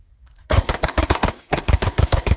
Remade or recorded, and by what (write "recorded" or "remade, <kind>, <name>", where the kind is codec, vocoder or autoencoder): remade, codec, SNAC